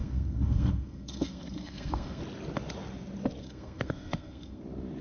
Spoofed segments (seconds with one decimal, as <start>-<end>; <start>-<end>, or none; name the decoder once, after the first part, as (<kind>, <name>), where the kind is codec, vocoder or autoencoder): 0.0-2.2 (codec, SNAC); 3.4-4.6